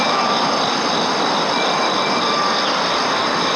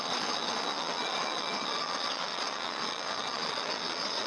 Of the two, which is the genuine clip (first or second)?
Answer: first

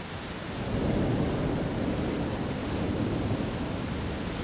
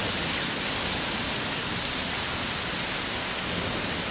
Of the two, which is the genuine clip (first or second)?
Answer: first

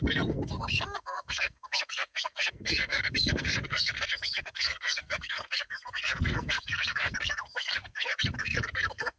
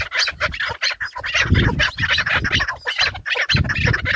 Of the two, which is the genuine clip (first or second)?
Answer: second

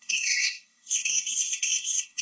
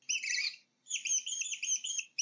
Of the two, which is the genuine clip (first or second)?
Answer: second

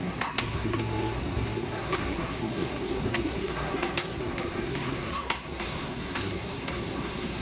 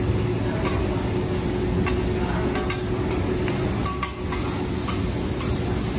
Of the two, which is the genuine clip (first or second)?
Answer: second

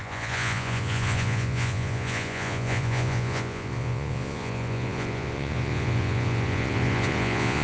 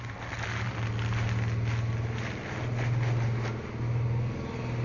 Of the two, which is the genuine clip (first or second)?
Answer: second